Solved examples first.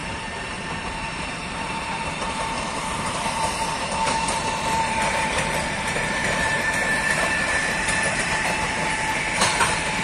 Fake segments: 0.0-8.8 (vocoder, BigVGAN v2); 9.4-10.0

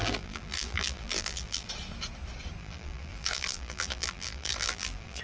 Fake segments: 0.0-1.7 (vocoder, BigVGAN v2); 2.6-5.2

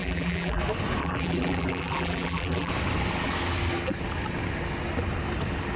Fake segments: 0.0-0.6 (vocoder, BigVGAN v2); 1.0-2.7

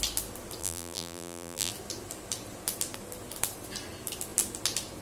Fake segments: 0.6-1.7 (vocoder, BigVGAN v2)

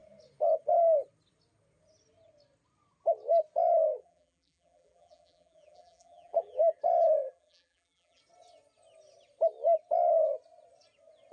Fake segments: 4.0-6.8 (vocoder, BigVGAN v2); 7.2-8.2

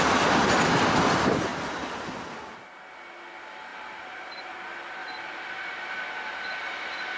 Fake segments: 3.7-4.6 (vocoder, BigVGAN v2); 5.0-6.6

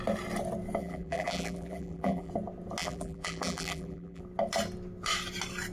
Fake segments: 0.8-2.3 (vocoder, BigVGAN v2); 2.8-4.2